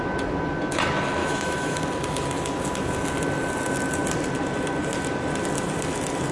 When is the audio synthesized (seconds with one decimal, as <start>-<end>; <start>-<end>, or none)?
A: 1.2-1.8